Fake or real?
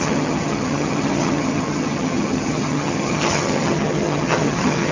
fake